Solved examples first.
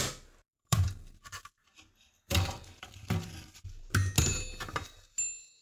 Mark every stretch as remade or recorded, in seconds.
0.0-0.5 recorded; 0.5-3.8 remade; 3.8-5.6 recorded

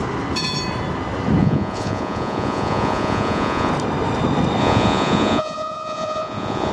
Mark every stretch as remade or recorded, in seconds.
0.0-1.4 recorded; 1.4-3.7 remade; 3.7-4.6 recorded; 4.6-6.7 remade

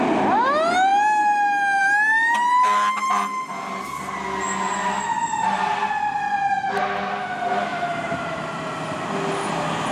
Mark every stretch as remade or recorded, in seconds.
0.0-7.7 recorded; 7.7-9.1 remade; 9.1-9.9 recorded

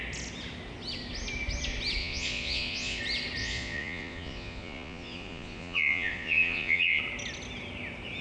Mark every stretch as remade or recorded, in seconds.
0.0-2.0 recorded; 2.0-3.0 remade; 3.0-3.4 recorded; 3.4-7.0 remade; 7.0-8.2 recorded

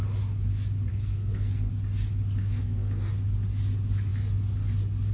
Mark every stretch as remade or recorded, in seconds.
0.0-0.9 recorded; 0.9-1.7 remade; 1.7-2.4 recorded; 2.4-3.1 remade; 3.1-5.1 recorded